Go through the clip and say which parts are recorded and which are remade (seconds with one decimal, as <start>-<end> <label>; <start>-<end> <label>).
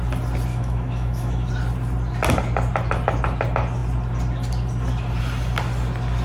0.0-0.5 recorded; 0.5-1.5 remade; 1.5-6.2 recorded